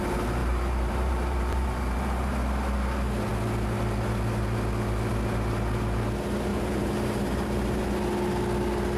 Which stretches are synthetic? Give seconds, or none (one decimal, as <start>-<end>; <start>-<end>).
0.4-2.3; 6.5-7.8